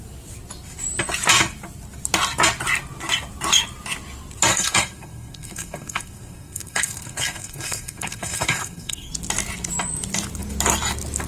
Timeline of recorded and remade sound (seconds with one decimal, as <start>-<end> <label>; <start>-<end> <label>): 0.0-4.5 recorded; 4.5-9.1 remade; 9.1-11.3 recorded